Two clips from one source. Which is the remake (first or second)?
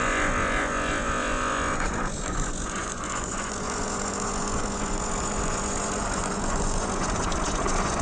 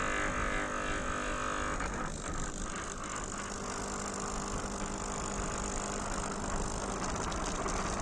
first